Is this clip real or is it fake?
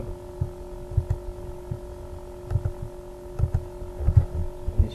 real